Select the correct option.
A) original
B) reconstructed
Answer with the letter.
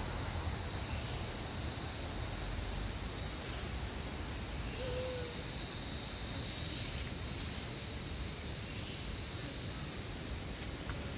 A